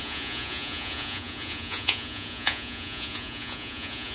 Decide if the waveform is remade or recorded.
remade